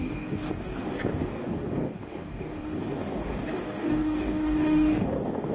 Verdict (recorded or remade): remade